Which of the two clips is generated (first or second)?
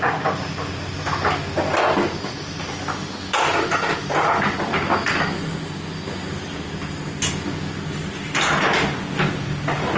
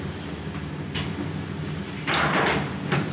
second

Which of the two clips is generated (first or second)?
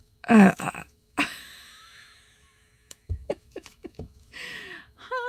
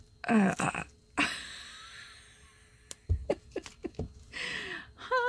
first